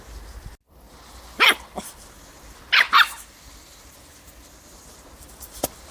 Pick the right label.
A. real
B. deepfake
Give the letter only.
A